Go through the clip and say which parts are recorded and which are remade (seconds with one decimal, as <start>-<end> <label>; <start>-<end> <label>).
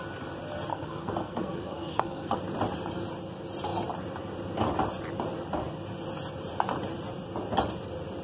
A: 0.0-0.7 recorded; 0.7-2.4 remade; 2.4-8.2 recorded